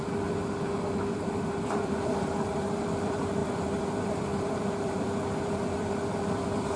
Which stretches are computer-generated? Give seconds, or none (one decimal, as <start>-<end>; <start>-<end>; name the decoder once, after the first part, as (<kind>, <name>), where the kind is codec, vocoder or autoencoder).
1.1-6.8 (vocoder, BigVGAN v2)